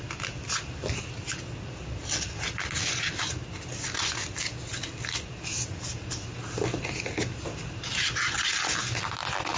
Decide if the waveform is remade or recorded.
recorded